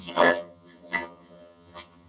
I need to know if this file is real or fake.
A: fake